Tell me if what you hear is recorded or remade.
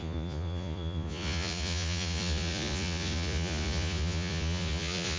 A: remade